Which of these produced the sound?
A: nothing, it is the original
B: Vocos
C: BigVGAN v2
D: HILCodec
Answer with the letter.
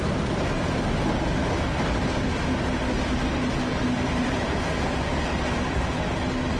A